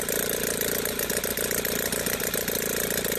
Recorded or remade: recorded